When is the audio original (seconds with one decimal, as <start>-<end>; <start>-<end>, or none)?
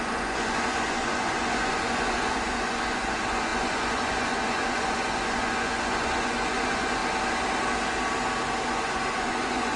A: 7.0-8.7